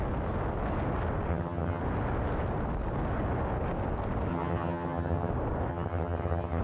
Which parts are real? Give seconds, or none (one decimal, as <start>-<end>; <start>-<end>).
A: 0.0-1.3; 1.8-4.3; 5.3-5.7